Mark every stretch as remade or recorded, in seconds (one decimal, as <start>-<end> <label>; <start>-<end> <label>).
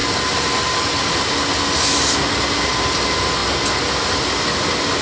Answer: 0.0-5.0 recorded